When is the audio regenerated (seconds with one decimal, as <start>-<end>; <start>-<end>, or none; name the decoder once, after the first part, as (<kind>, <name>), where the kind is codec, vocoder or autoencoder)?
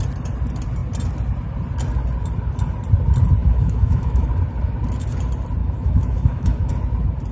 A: 3.4-4.3 (autoencoder, DAC-VAE); 5.6-6.7